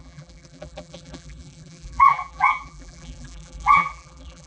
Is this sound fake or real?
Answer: fake